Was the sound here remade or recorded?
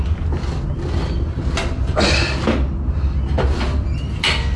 recorded